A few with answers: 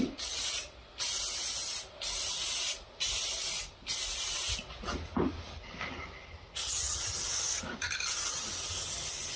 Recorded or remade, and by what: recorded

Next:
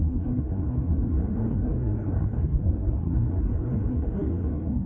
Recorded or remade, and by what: remade, codec, SNAC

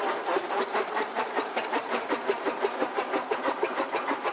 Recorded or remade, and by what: remade, vocoder, BigVGAN v2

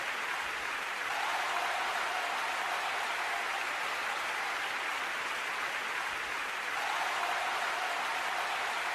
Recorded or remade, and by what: recorded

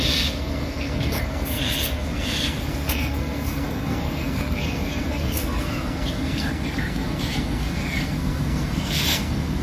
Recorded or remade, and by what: remade, codec, SNAC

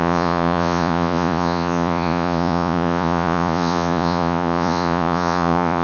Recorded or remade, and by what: remade, vocoder, Vocos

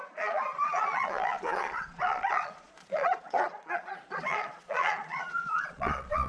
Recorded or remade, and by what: remade, vocoder, Vocos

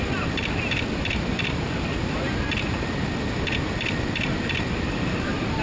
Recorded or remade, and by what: recorded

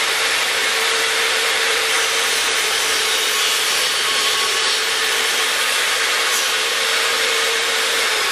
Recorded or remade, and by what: remade, vocoder, BigVGAN v2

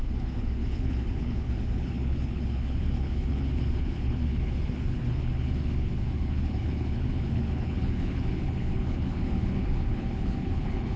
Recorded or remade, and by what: remade, codec, HILCodec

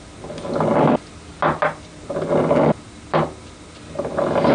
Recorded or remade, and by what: recorded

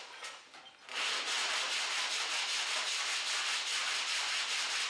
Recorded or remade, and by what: recorded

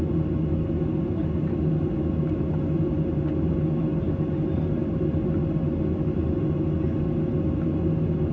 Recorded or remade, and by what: recorded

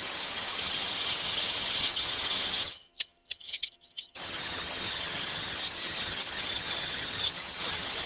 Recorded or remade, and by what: remade, vocoder, HiFi-GAN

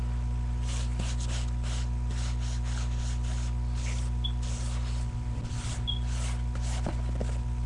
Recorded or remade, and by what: recorded